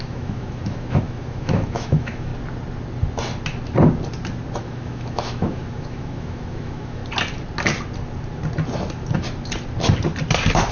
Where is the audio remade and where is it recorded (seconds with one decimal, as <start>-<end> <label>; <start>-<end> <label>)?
0.0-2.3 remade; 2.3-4.6 recorded; 4.6-7.0 remade; 7.0-10.7 recorded